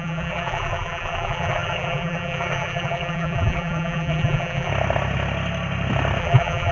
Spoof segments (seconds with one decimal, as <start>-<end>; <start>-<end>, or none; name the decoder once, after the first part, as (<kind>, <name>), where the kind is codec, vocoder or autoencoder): 0.0-4.7 (vocoder, BigVGAN v2); 6.2-6.7